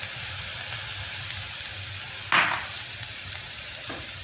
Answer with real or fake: real